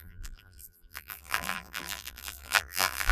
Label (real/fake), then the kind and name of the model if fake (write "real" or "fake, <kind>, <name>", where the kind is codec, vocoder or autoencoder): fake, vocoder, BigVGAN v2